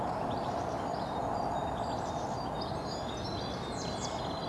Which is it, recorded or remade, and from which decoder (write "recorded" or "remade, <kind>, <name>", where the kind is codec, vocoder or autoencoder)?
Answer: recorded